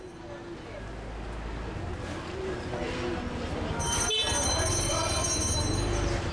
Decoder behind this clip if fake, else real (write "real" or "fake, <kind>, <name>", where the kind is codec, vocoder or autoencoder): real